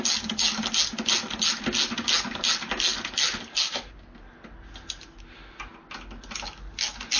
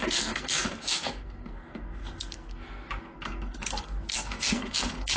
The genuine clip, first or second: first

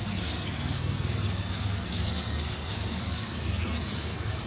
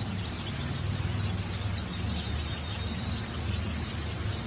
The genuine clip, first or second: second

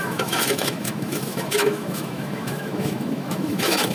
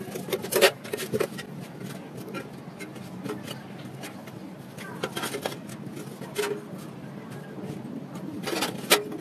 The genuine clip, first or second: second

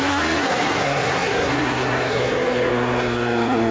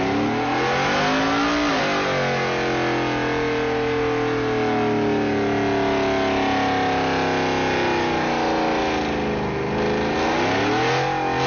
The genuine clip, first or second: second